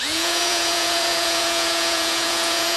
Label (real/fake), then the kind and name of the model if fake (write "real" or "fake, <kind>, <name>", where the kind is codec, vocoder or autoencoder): fake, vocoder, Vocos